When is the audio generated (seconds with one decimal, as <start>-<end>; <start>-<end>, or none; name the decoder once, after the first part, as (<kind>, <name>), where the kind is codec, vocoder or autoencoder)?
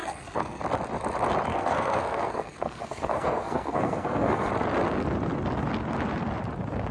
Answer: 0.0-0.6 (codec, SNAC); 1.5-4.5